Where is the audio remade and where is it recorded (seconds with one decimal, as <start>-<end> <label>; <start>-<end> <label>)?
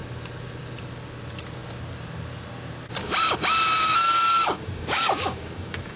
0.0-4.0 recorded; 4.0-6.0 remade